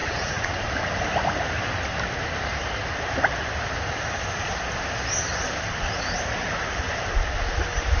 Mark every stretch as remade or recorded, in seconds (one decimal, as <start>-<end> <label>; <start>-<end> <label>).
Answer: 0.0-0.5 remade; 0.5-8.0 recorded